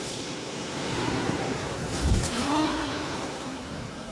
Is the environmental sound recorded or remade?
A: remade